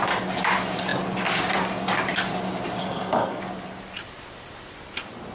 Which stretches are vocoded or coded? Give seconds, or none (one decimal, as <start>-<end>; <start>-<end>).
2.8-3.4